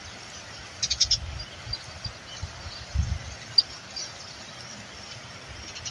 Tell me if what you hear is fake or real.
real